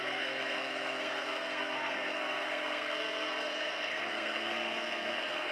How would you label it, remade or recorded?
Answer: remade